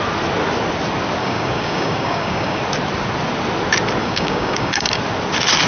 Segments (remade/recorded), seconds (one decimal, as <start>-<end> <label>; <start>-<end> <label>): 0.0-1.2 recorded; 1.2-2.6 remade; 2.6-4.0 recorded; 4.0-5.0 remade; 5.0-5.7 recorded